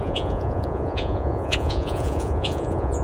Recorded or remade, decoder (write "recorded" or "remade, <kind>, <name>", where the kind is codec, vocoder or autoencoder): remade, vocoder, Vocos